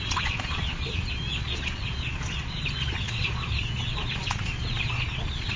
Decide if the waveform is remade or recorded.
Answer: remade